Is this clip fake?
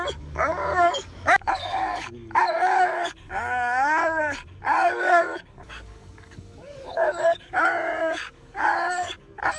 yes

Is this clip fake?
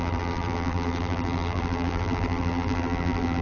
yes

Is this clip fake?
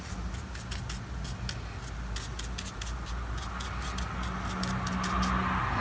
no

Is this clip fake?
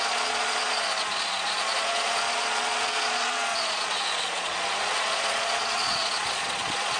yes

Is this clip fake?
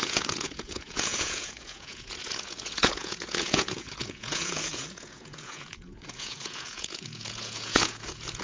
yes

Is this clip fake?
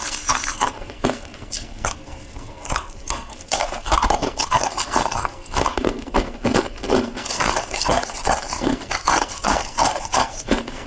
yes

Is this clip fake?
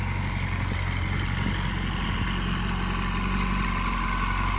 no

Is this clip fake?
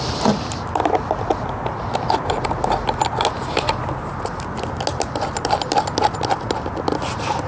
no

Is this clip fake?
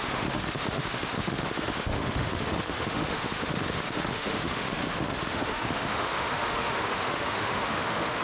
yes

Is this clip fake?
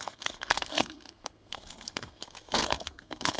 yes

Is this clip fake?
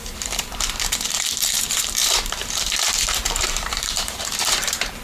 yes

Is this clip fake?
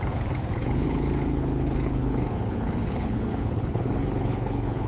yes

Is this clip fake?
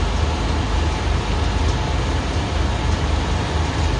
no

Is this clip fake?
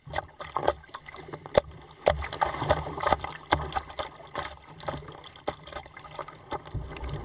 no